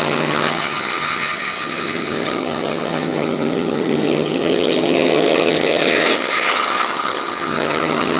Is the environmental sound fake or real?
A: fake